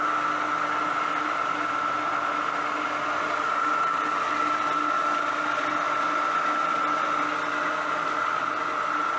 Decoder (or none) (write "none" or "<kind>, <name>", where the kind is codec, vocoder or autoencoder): none